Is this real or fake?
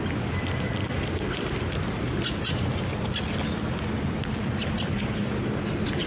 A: real